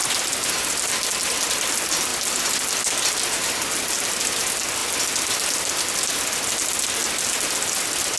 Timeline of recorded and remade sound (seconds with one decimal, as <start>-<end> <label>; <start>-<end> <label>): 0.0-8.2 recorded